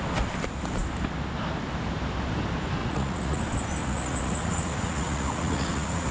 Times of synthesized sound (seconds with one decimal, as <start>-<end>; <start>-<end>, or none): 2.8-3.4; 3.8-6.1